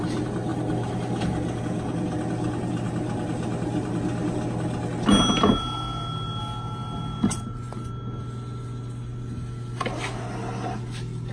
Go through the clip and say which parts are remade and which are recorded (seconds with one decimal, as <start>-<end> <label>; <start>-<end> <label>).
0.0-11.3 recorded